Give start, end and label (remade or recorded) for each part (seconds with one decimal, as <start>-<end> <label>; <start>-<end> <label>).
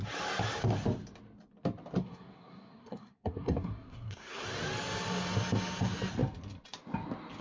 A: 0.0-2.0 recorded; 2.0-4.4 remade; 4.4-7.4 recorded